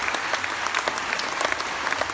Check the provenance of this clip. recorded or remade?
recorded